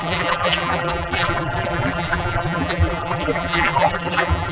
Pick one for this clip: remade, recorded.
remade